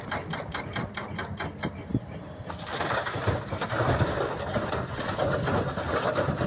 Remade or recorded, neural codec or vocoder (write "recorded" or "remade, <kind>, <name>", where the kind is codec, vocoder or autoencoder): recorded